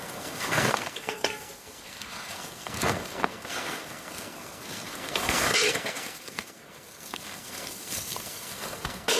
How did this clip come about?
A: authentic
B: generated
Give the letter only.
B